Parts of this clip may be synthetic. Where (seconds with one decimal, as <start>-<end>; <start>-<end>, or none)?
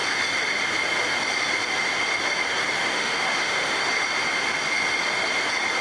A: 2.8-3.8